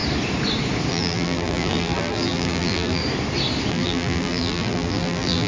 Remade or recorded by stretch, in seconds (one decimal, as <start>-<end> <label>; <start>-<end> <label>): 0.0-0.9 recorded; 0.9-3.0 remade; 3.0-3.7 recorded; 3.7-5.5 remade